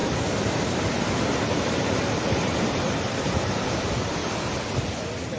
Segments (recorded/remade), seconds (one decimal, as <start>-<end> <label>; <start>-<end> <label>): 0.0-4.2 remade; 4.2-4.8 recorded; 4.8-5.4 remade

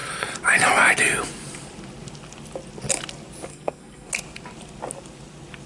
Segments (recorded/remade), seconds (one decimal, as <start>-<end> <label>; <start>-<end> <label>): 0.0-3.5 recorded; 3.5-4.1 remade; 4.1-5.7 recorded

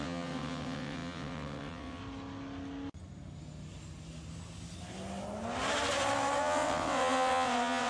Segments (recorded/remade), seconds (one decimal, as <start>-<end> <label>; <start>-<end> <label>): 0.0-2.0 remade; 2.0-6.4 recorded; 6.4-7.9 remade

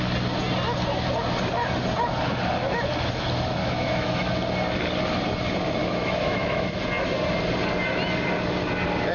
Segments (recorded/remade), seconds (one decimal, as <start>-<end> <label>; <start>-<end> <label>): 0.0-3.6 recorded; 3.6-4.3 remade; 4.3-5.8 recorded; 5.8-6.8 remade; 6.8-9.1 recorded